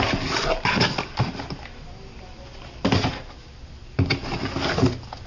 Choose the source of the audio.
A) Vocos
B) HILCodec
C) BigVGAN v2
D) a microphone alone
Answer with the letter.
D